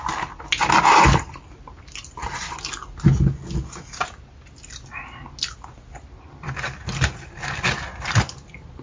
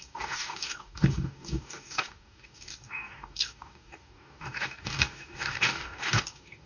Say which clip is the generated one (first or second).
second